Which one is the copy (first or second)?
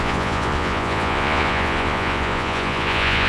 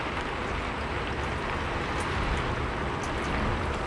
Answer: first